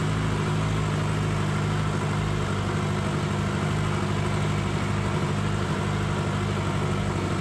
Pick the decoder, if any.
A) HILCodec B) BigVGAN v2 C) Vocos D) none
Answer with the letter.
D